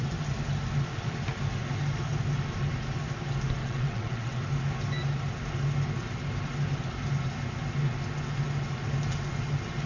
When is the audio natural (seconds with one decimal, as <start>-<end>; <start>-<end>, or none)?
0.0-3.6; 4.4-9.9